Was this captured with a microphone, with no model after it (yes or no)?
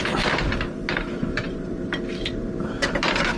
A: no